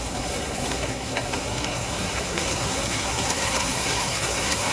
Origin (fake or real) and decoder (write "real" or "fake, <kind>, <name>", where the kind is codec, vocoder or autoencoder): fake, codec, SNAC